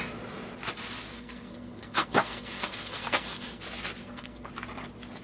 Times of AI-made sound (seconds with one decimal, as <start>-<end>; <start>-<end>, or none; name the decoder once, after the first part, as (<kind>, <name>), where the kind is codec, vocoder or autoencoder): 1.1-3.6 (codec, SNAC); 4.0-4.5